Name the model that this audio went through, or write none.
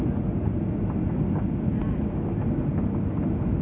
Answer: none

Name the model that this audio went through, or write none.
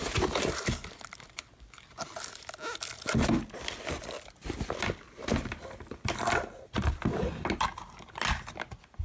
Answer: none